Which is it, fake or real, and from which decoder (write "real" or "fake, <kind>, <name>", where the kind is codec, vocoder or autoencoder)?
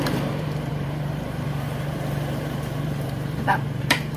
fake, vocoder, BigVGAN v2